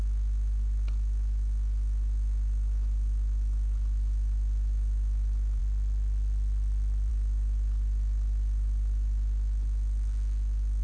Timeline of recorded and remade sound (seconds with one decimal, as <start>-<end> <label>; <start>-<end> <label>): 0.0-10.8 recorded